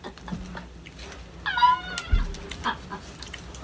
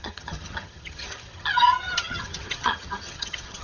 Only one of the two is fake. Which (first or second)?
second